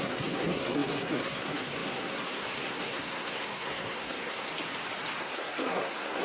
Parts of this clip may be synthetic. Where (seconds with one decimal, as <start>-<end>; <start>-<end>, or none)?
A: 0.0-4.5; 5.2-6.2